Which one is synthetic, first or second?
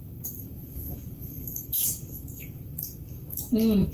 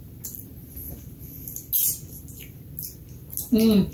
first